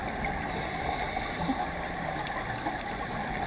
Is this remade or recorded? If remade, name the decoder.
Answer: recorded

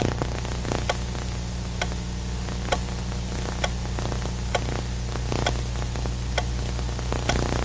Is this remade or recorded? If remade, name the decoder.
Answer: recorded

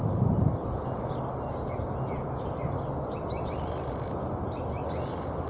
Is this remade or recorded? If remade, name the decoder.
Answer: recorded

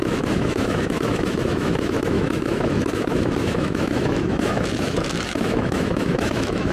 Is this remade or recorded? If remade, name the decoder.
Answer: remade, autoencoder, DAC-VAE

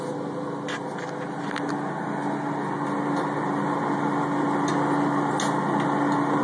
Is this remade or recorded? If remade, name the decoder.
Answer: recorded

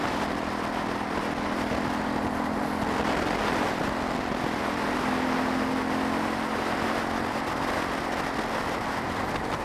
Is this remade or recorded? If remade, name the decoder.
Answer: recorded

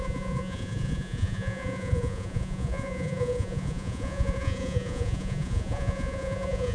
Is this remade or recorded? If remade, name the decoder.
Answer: remade, vocoder, Vocos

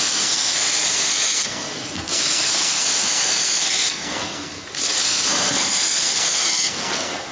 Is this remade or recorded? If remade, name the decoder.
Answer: remade, codec, SNAC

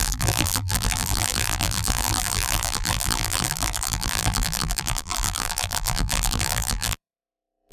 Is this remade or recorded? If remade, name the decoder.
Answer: remade, vocoder, BigVGAN v2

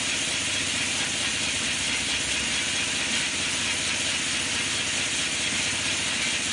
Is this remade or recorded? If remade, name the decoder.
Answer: recorded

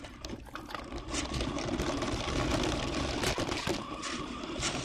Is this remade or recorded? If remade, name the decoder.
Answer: recorded